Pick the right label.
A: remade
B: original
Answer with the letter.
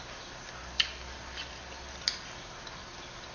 B